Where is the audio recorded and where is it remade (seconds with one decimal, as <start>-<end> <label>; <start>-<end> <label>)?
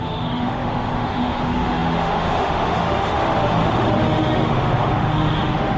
0.0-5.8 remade